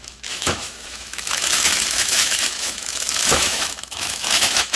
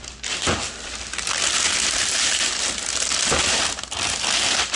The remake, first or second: first